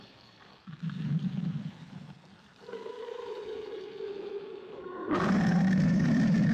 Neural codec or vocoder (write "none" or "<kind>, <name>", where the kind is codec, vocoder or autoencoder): vocoder, BigVGAN v2